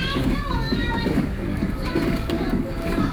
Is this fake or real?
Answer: fake